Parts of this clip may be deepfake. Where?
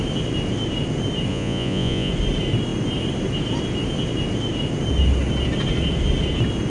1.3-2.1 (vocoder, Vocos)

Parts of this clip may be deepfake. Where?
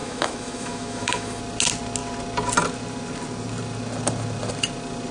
0.0-1.4 (autoencoder, DAC-VAE)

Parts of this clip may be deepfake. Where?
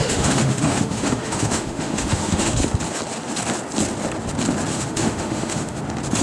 0.0-2.6 (autoencoder, DAC-VAE); 4.7-5.8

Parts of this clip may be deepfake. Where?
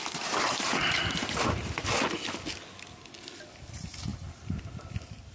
0.0-0.7 (vocoder, BigVGAN v2)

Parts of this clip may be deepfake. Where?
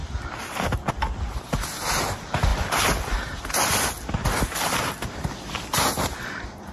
none